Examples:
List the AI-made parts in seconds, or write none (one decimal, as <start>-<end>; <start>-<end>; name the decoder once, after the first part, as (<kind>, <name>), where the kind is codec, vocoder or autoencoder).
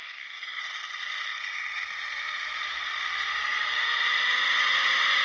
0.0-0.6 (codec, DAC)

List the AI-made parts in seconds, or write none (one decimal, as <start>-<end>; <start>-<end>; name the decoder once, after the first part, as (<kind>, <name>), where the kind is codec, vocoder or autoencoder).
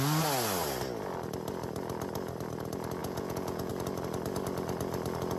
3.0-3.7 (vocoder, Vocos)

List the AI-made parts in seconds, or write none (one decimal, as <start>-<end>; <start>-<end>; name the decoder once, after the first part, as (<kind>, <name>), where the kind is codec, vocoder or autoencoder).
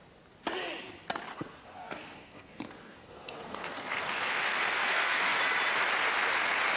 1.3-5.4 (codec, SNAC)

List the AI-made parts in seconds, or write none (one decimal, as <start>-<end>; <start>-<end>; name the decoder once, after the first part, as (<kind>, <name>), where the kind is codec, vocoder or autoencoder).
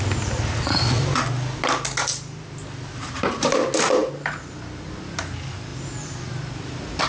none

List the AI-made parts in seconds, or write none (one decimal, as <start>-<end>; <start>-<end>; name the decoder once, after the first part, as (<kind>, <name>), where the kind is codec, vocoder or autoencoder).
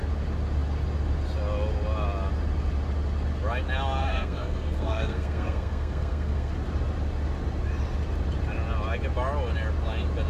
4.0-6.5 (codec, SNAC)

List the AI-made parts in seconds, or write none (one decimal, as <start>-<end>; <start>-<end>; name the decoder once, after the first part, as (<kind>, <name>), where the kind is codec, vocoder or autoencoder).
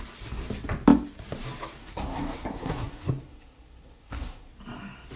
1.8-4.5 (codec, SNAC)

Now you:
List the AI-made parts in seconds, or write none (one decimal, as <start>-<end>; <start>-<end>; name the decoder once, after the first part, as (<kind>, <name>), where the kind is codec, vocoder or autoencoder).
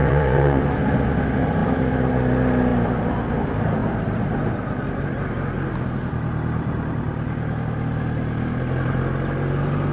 0.0-0.6 (vocoder, Vocos)